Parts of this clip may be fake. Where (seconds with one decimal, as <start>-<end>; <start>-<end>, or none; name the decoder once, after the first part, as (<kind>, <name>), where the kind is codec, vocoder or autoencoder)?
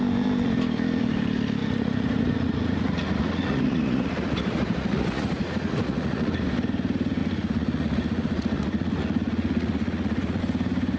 1.6-6.4 (vocoder, Vocos); 7.2-10.4